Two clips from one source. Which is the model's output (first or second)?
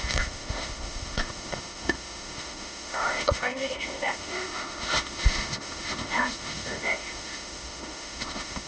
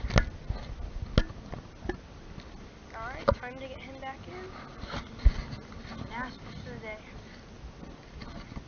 first